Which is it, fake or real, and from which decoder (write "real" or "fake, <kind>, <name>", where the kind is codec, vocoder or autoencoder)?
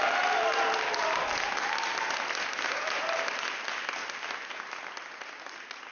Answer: real